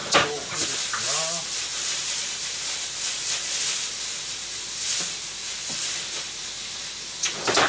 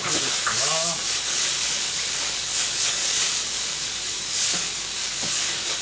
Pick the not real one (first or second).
second